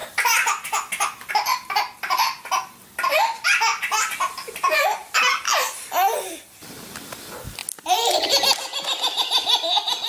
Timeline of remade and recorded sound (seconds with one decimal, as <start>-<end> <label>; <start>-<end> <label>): 0.0-10.1 recorded